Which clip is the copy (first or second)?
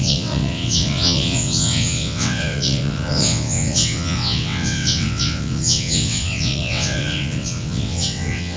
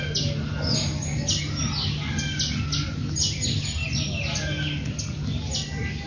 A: first